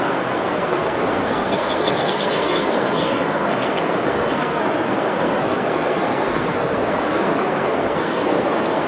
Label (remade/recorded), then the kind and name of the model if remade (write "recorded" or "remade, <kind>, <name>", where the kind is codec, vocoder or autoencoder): remade, codec, SNAC